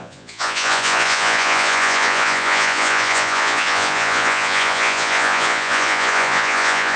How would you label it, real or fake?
fake